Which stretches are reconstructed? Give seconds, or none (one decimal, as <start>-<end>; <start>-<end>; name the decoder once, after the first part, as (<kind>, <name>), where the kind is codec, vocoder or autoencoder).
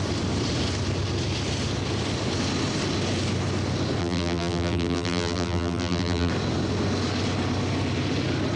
4.0-6.3 (vocoder, BigVGAN v2)